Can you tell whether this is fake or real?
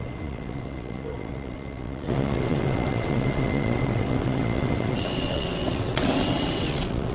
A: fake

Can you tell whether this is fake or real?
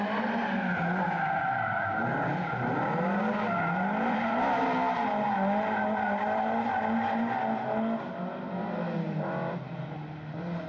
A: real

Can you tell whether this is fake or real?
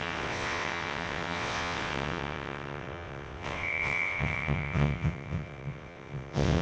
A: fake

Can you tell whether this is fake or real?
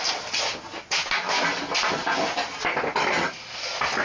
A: real